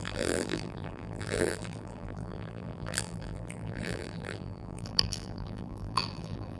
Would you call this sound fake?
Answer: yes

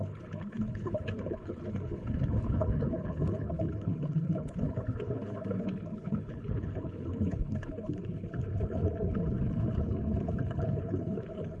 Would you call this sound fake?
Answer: yes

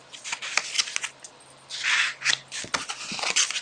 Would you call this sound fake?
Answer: no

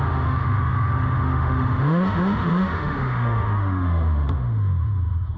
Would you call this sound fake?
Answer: yes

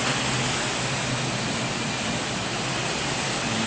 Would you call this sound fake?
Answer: no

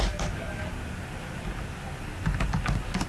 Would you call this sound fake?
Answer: no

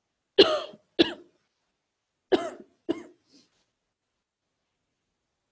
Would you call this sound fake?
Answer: no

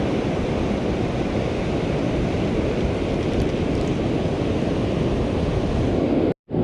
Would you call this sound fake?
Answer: no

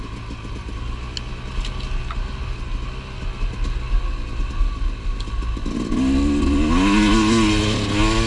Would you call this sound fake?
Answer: no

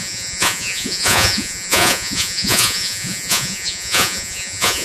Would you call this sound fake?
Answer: yes